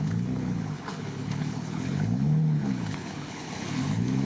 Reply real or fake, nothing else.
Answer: fake